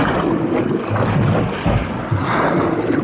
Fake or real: real